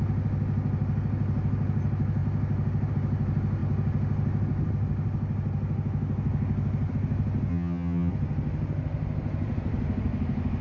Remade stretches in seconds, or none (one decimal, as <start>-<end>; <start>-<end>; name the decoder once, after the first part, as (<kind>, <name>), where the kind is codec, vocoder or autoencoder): 7.5-8.1 (vocoder, HiFi-GAN)